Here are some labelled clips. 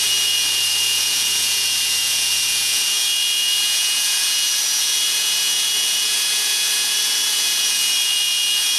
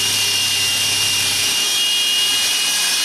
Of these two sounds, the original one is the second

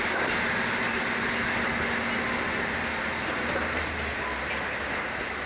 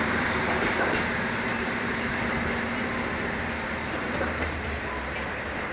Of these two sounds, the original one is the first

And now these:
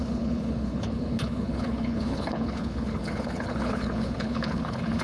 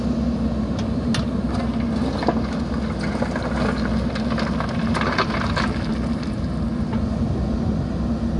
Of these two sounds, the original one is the second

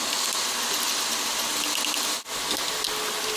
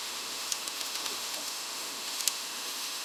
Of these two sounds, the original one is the first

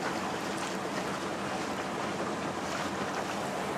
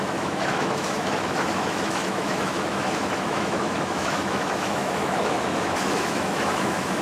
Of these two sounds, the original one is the first